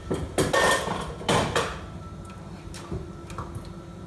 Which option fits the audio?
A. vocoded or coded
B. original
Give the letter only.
B